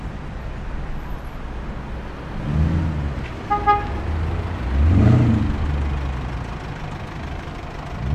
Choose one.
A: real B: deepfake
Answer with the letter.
A